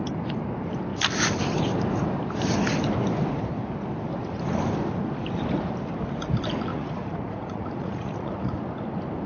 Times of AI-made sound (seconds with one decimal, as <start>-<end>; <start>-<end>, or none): 6.7-8.6